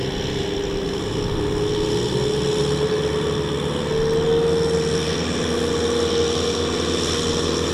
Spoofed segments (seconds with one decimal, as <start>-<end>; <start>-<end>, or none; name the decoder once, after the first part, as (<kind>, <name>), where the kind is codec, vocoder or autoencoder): none